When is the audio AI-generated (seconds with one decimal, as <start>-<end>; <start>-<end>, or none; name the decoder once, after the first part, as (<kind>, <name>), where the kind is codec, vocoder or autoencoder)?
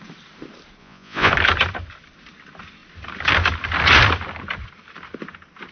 0.8-1.3 (vocoder, Vocos)